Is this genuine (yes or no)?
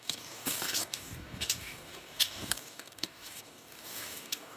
no